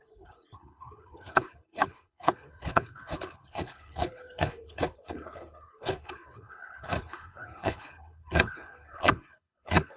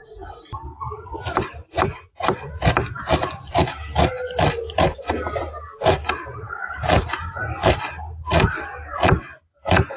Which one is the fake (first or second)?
first